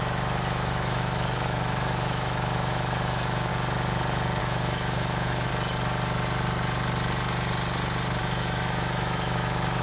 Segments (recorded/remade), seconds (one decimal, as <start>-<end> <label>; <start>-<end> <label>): 0.0-3.5 remade; 3.5-4.4 recorded; 4.4-5.5 remade; 5.5-8.2 recorded; 8.2-9.8 remade